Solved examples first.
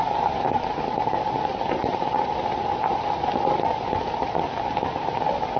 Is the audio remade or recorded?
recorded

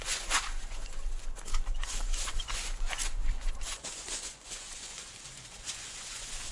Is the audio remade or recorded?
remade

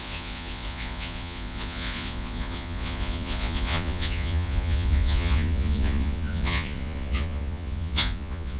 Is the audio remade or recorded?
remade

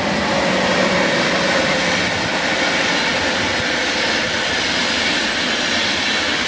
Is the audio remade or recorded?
recorded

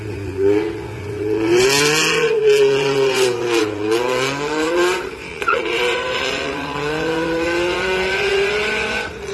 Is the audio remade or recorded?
remade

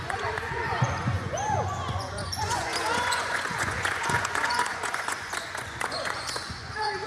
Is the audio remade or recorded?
remade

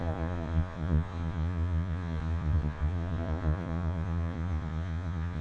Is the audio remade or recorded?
remade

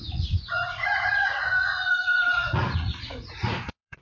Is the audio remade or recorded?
remade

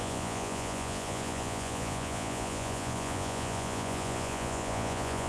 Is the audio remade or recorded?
remade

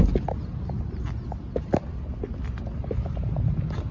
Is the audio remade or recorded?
recorded